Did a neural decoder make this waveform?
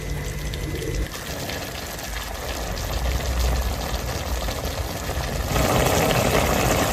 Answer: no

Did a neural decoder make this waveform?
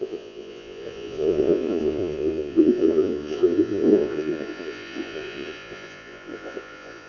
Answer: yes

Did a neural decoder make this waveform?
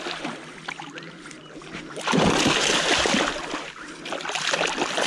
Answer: no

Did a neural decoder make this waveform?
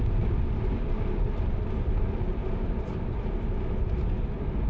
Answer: no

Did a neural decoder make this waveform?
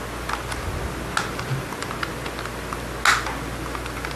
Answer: no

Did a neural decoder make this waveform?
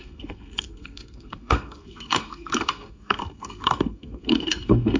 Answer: yes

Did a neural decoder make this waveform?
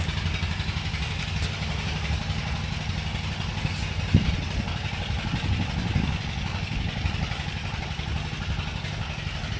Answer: no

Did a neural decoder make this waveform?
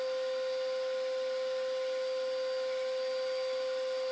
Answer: no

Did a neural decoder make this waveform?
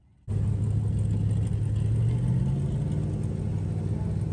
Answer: no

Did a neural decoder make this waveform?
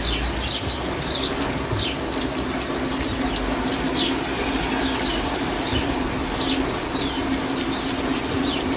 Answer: no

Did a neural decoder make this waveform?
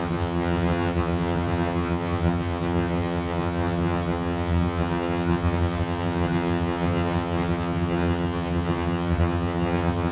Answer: yes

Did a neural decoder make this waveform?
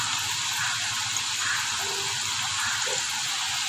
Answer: no